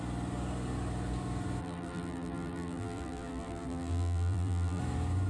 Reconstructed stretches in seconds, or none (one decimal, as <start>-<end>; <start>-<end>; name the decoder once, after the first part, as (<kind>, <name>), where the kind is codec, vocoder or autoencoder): 1.6-4.8 (vocoder, BigVGAN v2)